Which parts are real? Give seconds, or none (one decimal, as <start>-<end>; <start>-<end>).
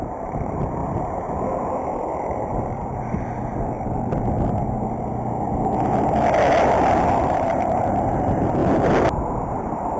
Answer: 0.8-2.1; 2.5-7.2; 8.6-9.5